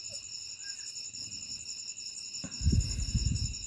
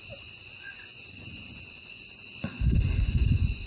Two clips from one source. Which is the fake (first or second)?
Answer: second